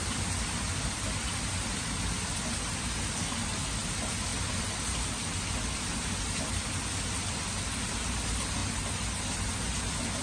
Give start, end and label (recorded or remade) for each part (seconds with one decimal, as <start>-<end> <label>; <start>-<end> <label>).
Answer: 0.0-10.2 recorded